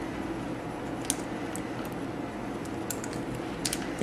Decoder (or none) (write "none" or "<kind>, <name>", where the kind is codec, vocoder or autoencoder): none